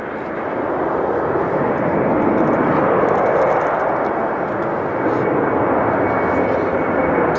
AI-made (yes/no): no